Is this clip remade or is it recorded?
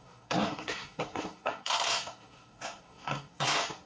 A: remade